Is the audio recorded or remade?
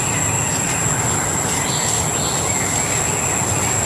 recorded